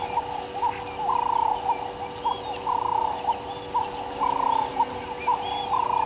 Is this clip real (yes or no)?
yes